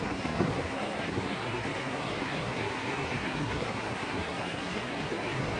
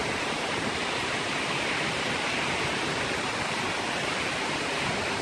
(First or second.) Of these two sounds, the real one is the second